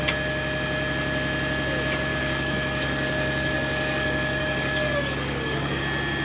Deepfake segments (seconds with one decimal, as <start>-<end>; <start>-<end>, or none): 2.1-5.8